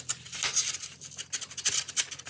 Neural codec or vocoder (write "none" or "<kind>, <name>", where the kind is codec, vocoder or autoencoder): none